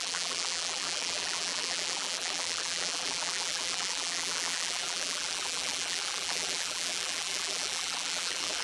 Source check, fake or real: fake